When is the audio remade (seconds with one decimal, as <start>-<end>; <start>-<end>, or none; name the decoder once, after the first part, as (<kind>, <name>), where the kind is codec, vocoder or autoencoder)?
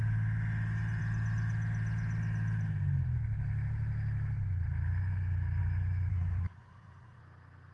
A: 6.1-7.2 (codec, SNAC)